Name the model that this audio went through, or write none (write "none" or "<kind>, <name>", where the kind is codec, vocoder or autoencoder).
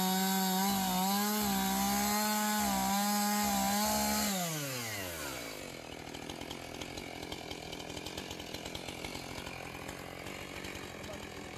none